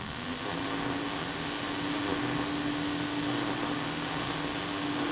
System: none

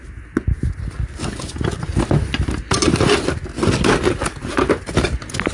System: none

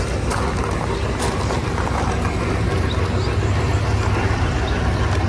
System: none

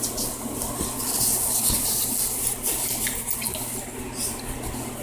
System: none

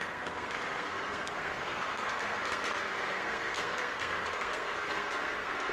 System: codec, SNAC